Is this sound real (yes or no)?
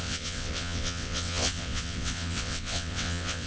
no